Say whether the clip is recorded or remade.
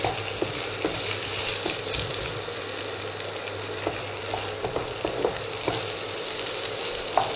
recorded